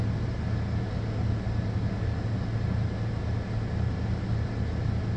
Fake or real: real